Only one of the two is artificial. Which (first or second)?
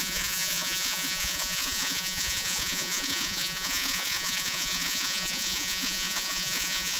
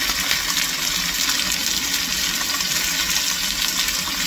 first